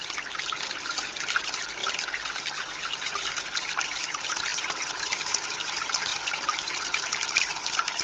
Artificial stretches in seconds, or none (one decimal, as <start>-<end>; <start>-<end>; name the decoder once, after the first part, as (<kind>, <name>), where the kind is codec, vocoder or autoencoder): 0.0-1.8 (vocoder, BigVGAN v2); 3.1-8.0